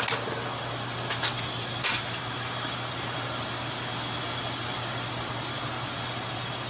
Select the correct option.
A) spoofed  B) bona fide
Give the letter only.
B